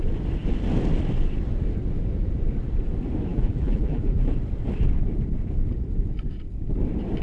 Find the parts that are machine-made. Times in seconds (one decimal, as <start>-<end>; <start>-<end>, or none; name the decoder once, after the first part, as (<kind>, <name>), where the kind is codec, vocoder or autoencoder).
3.3-4.3 (vocoder, BigVGAN v2)